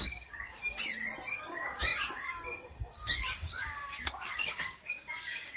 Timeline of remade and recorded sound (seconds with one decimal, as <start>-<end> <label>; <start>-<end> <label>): 0.0-0.6 remade; 0.6-1.3 recorded; 1.3-5.6 remade